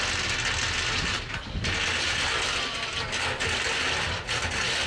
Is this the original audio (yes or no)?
yes